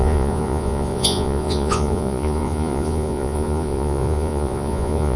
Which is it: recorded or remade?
remade